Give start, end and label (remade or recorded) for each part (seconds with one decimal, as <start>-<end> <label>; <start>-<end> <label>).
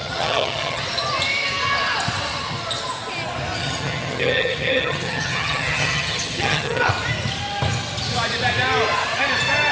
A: 0.0-0.8 remade; 0.8-3.6 recorded; 3.6-6.9 remade; 6.9-9.7 recorded